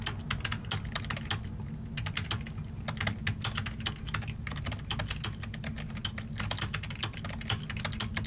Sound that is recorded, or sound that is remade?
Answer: recorded